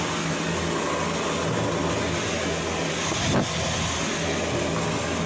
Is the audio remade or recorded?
recorded